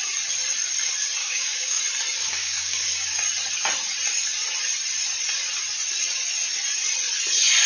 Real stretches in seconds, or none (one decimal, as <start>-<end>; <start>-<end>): 0.0-1.2; 1.8-2.2; 3.1-7.7